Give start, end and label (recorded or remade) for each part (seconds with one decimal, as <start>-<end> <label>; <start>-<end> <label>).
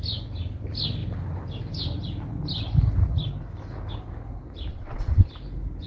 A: 0.0-4.7 recorded; 4.7-5.3 remade; 5.3-5.9 recorded